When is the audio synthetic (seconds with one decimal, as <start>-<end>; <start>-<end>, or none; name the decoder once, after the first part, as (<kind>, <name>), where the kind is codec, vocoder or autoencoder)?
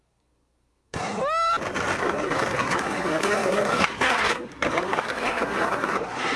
0.0-1.2 (codec, SNAC); 2.0-6.4